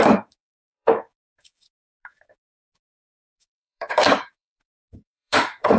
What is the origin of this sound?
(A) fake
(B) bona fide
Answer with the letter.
A